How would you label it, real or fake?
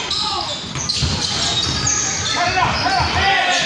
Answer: real